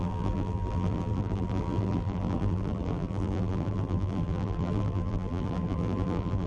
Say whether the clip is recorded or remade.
remade